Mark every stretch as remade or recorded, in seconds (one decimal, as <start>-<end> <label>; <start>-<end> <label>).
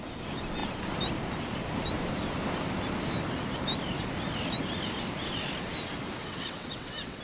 0.0-6.2 recorded; 6.2-7.2 remade